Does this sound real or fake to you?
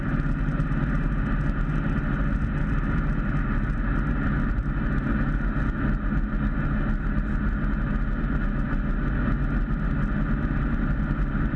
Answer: real